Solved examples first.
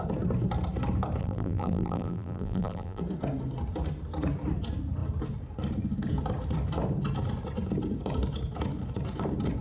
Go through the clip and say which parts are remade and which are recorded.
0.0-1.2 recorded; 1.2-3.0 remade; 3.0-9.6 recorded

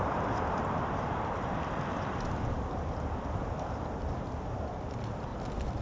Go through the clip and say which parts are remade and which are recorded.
0.0-5.3 remade; 5.3-5.8 recorded

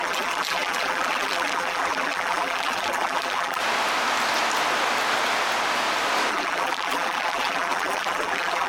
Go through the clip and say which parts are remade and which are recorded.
0.0-3.6 remade; 3.6-6.3 recorded; 6.3-8.7 remade

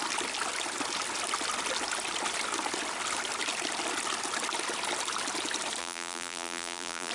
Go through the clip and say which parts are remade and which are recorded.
0.0-5.8 recorded; 5.8-7.1 remade

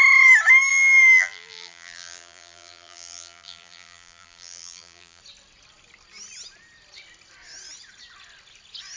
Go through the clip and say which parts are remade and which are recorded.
0.0-0.7 recorded; 0.7-5.2 remade; 5.2-9.0 recorded